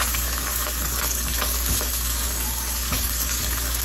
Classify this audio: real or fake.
fake